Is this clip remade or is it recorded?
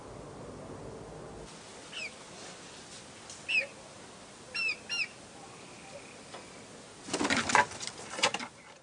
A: recorded